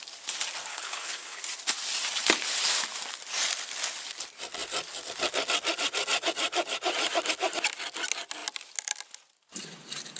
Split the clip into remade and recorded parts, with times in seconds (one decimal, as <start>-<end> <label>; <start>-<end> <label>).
0.0-0.7 recorded; 0.7-1.4 remade; 1.4-10.2 recorded